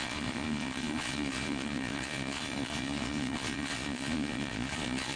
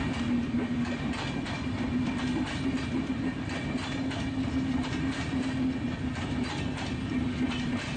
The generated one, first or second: first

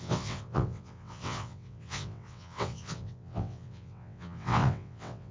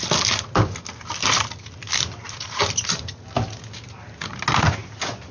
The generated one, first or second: first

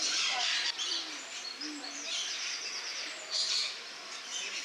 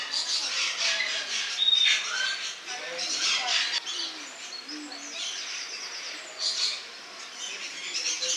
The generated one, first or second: first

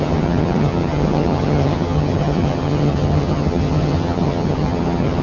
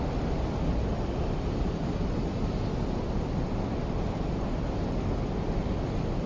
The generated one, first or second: first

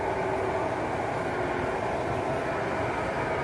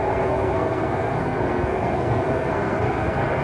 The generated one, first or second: second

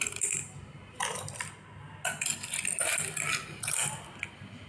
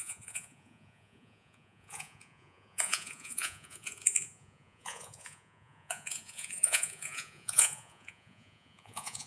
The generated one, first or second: second